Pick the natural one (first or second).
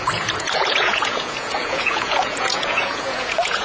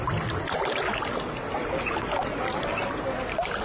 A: second